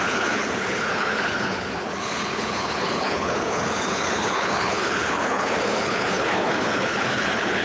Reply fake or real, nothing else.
fake